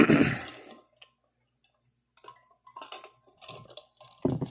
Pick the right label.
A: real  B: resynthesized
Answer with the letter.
A